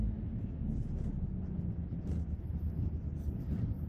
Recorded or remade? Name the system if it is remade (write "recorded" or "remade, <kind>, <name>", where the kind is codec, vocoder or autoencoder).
recorded